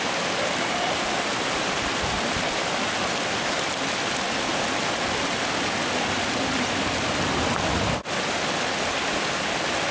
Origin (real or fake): real